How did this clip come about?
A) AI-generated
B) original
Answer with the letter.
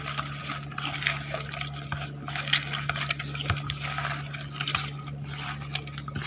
B